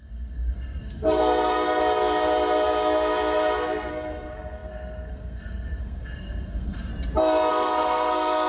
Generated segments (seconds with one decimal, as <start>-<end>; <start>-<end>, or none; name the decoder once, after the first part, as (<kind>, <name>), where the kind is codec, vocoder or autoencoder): 0.0-1.8 (codec, SNAC); 3.9-6.9; 7.5-8.5